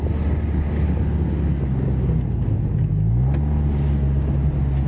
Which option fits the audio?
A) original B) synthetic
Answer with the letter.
A